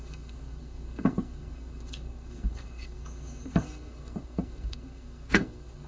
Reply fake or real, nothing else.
fake